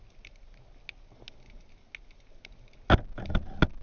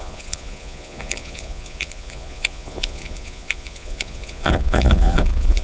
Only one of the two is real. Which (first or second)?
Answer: first